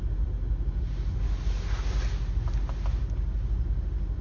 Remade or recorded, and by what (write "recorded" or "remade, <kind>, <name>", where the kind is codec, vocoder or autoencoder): recorded